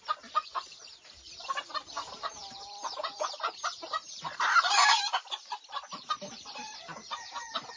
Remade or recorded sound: remade